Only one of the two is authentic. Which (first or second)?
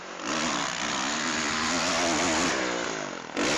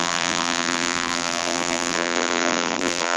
first